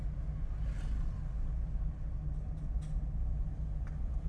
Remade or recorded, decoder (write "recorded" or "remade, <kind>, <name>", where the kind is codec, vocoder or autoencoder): recorded